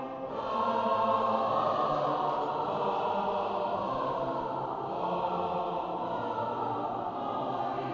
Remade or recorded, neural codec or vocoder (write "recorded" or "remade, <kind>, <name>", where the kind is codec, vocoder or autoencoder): recorded